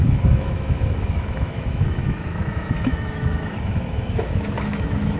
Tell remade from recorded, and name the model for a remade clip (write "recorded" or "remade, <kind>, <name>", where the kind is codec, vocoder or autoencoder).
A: remade, autoencoder, DAC-VAE